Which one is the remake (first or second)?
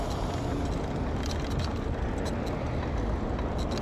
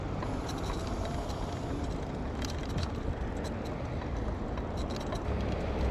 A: second